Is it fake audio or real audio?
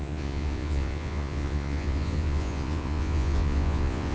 fake